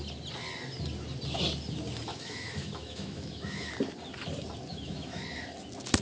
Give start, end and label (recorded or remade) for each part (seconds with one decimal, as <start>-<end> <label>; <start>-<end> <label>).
0.0-2.1 recorded; 2.1-3.7 remade; 3.7-4.7 recorded; 4.7-5.2 remade; 5.2-6.0 recorded